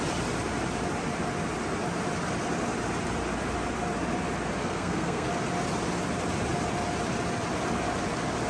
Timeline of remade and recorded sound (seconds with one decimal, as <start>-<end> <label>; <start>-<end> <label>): 0.0-4.6 recorded; 4.6-5.3 remade; 5.3-8.5 recorded